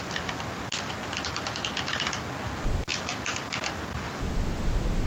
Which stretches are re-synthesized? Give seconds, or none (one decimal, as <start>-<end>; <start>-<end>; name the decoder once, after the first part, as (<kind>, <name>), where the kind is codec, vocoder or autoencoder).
none